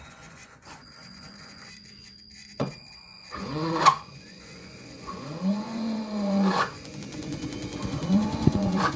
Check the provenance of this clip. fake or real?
fake